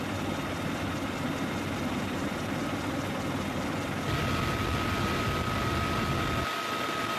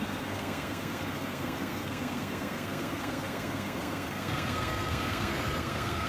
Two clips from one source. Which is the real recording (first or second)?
first